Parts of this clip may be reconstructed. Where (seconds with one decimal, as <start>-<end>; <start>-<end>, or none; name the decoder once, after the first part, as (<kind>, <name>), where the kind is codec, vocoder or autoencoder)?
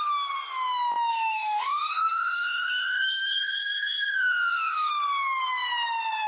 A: 1.1-4.9 (codec, DAC)